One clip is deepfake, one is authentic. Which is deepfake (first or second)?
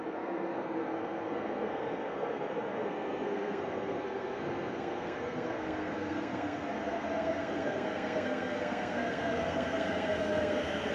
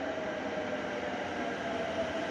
first